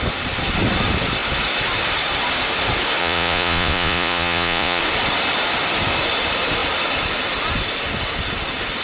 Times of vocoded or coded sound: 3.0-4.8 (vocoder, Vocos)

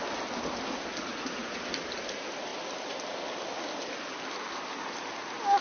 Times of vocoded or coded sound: 1.1-1.7 (vocoder, Vocos)